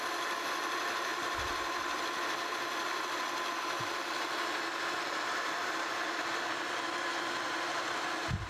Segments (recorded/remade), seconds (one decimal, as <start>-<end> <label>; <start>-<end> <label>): 0.0-8.5 remade